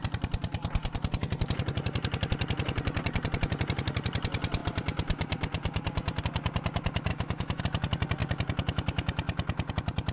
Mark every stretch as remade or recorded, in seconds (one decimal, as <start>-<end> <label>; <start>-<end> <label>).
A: 0.0-7.1 recorded; 7.1-7.6 remade; 7.6-10.1 recorded